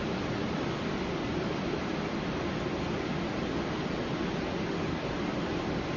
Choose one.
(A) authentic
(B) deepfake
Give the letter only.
A